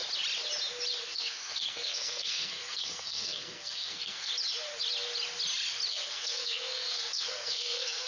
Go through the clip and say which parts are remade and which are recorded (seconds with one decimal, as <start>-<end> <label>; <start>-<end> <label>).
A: 0.0-1.0 recorded; 1.0-4.3 remade; 4.3-5.9 recorded; 5.9-8.1 remade